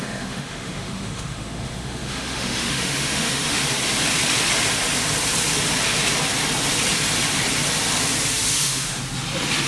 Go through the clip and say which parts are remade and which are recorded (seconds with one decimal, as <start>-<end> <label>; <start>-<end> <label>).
0.0-3.6 remade; 3.6-8.2 recorded; 8.2-9.0 remade; 9.0-9.7 recorded